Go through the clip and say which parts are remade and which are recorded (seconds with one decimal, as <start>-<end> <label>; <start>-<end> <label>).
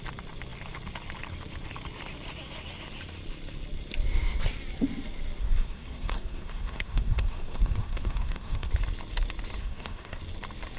0.0-5.4 recorded; 5.4-8.7 remade; 8.7-9.6 recorded; 9.6-10.2 remade; 10.2-10.8 recorded